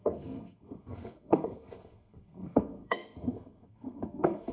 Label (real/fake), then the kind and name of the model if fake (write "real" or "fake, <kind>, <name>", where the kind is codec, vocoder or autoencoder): fake, codec, SNAC